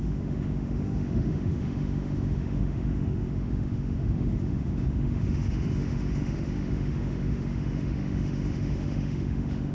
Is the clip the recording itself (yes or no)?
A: no